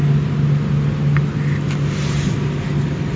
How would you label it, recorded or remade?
recorded